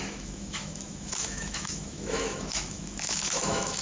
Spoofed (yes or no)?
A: yes